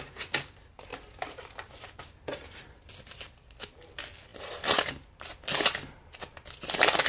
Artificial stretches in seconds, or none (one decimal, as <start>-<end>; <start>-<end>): none